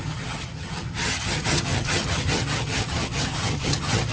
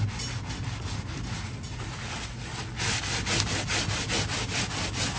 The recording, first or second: second